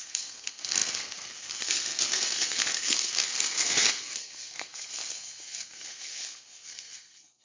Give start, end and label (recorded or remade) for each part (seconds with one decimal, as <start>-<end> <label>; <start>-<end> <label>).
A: 0.0-7.4 remade